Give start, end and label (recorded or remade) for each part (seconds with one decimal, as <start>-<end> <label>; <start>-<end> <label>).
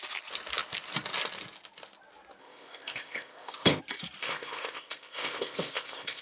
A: 0.0-2.4 recorded; 2.4-3.8 remade; 3.8-4.2 recorded; 4.2-6.2 remade